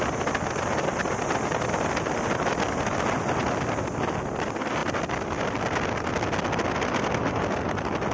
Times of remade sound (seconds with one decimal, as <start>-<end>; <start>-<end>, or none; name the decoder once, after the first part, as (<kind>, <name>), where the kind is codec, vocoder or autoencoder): none